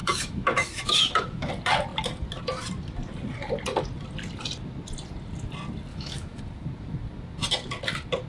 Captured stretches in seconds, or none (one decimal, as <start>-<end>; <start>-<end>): 1.5-5.9; 6.4-8.3